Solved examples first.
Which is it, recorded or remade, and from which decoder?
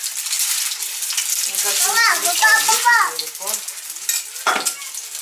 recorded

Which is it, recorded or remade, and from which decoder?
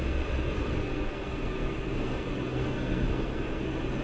remade, codec, SNAC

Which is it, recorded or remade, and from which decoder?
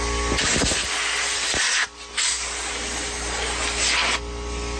recorded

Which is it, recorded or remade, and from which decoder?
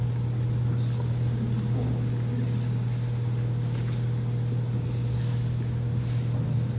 recorded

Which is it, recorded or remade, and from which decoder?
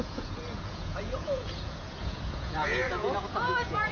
remade, vocoder, Vocos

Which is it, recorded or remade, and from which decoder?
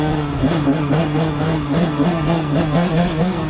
remade, codec, SNAC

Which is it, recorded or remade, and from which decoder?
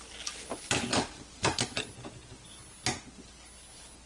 recorded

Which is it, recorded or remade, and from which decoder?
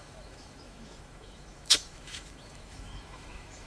remade, autoencoder, DAC-VAE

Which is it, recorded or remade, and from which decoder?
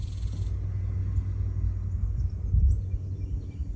recorded